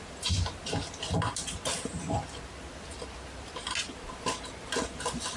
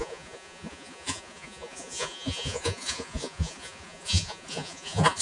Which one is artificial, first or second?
second